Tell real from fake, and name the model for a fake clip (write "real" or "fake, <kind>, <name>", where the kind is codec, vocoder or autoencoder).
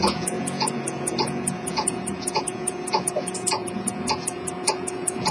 fake, vocoder, Vocos